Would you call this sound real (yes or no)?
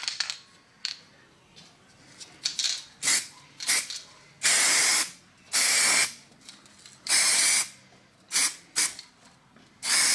yes